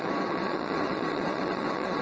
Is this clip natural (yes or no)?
no